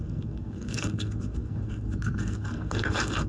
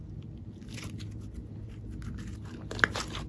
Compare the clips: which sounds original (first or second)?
second